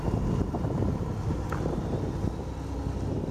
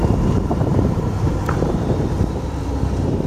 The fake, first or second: second